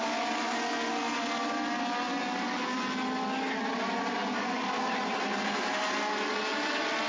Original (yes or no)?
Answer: yes